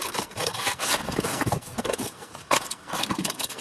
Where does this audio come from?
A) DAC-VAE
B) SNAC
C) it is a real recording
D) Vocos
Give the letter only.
B